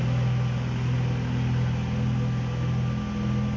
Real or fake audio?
real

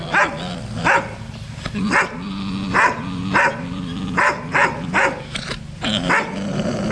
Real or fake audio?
fake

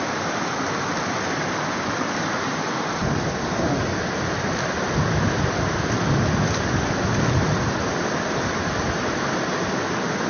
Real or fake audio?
real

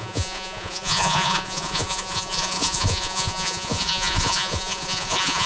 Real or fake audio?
fake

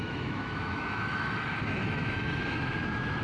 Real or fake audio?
fake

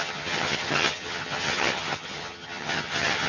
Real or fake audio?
fake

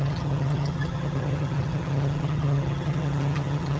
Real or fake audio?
fake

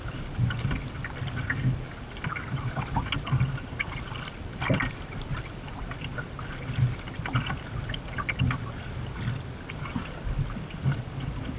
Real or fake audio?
real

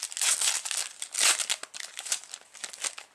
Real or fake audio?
real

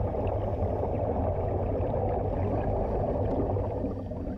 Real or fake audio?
real